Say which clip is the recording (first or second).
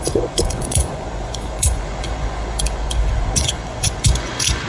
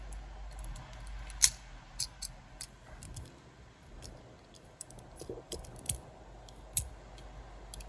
second